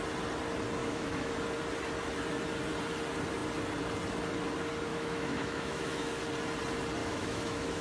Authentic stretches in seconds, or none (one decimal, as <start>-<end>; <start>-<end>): 0.0-0.8; 1.3-4.9; 6.2-7.0